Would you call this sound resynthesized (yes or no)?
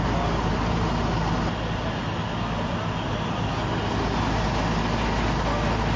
no